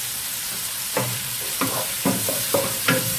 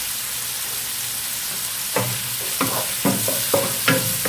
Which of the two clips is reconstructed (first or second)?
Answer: first